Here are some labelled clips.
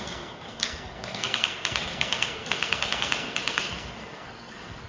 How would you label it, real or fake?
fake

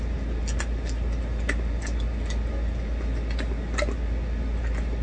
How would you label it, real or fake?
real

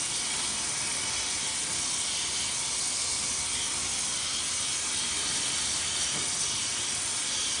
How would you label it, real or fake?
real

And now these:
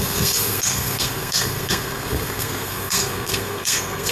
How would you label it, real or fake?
fake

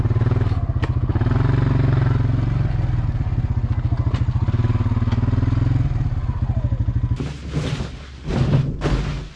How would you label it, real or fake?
real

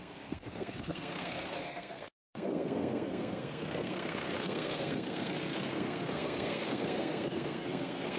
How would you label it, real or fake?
fake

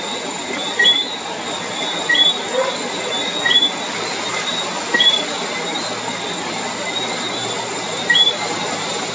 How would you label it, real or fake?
real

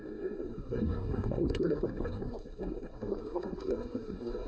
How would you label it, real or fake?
fake